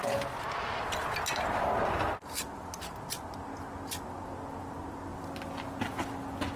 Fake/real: real